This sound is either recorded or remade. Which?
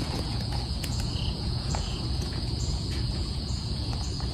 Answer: remade